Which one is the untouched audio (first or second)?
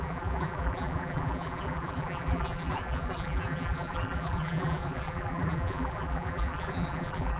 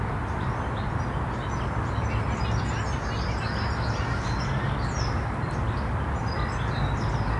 second